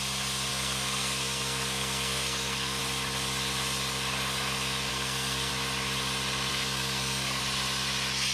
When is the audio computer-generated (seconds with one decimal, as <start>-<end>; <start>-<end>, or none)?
0.5-2.8; 4.9-5.5; 6.5-7.4